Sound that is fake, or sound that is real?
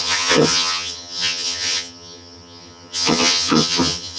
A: fake